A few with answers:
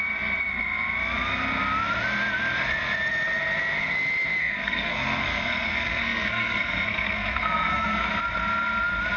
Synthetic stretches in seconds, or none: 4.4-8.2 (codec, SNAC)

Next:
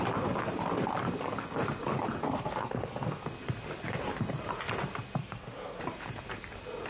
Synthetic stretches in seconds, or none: 2.2-3.2 (codec, SNAC); 5.2-5.8